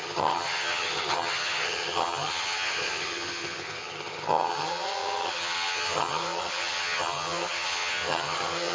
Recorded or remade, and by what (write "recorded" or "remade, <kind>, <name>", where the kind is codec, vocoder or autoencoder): remade, vocoder, HiFi-GAN